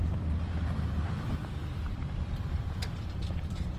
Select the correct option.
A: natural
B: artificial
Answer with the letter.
B